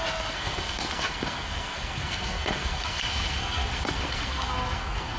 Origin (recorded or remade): remade